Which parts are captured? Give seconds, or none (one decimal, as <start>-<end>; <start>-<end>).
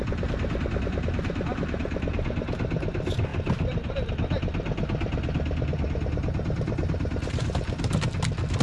0.0-8.6